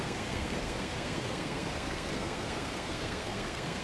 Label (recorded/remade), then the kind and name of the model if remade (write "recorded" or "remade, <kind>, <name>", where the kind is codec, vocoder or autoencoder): remade, codec, SNAC